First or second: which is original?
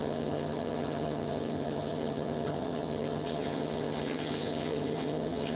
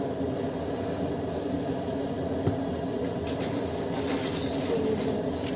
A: second